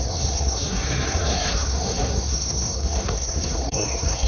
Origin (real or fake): fake